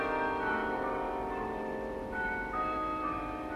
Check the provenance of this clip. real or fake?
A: fake